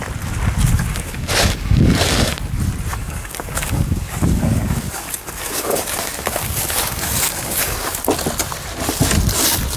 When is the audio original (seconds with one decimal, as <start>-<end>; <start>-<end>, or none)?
0.0-0.9; 2.4-2.9; 8.0-9.8